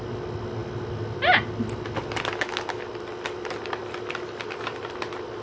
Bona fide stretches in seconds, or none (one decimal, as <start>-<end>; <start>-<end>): 0.0-5.4